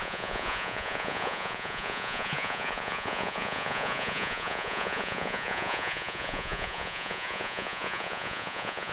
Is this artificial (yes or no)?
yes